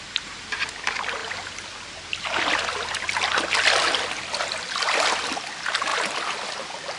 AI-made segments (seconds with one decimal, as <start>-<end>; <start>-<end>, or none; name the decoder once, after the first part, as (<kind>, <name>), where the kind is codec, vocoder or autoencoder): none